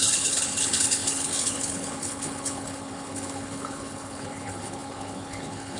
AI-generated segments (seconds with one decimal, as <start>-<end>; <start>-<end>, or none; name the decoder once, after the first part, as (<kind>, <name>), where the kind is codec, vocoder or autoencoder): 0.0-5.8 (codec, HILCodec)